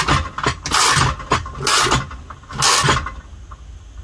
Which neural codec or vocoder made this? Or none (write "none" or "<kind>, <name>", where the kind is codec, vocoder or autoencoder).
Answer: none